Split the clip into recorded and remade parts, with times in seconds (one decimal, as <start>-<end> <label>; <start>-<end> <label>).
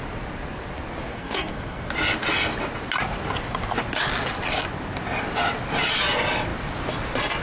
0.0-1.1 recorded; 1.1-1.9 remade; 1.9-7.4 recorded